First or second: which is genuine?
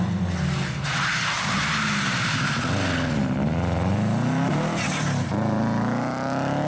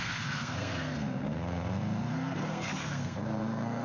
first